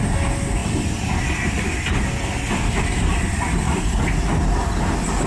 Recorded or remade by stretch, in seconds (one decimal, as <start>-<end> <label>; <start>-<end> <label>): 0.0-5.3 recorded